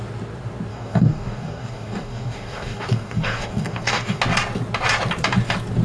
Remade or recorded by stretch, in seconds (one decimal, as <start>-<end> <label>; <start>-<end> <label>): 0.0-0.7 recorded; 0.7-4.2 remade; 4.2-5.8 recorded